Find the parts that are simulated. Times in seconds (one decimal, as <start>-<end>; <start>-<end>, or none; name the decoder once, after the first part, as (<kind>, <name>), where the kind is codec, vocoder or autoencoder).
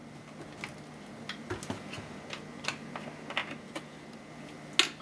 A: none